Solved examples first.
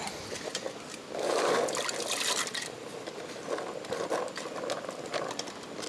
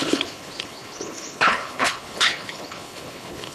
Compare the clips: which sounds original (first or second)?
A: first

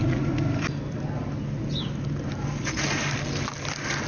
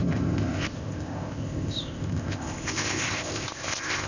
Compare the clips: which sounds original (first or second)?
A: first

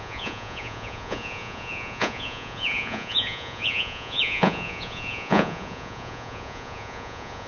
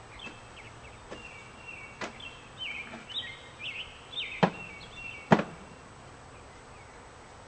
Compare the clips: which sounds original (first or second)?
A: second